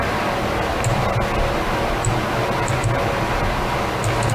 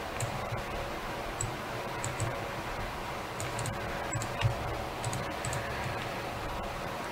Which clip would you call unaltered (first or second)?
first